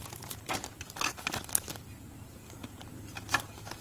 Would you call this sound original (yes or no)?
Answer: no